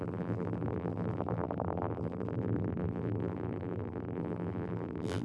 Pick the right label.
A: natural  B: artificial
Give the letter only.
B